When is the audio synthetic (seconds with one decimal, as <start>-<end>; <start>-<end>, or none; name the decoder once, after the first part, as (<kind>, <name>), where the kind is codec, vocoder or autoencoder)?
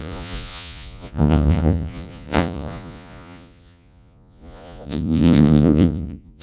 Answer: 0.0-6.4 (vocoder, Vocos)